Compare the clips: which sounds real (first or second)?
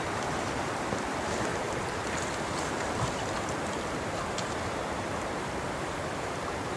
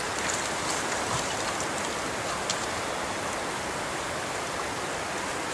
second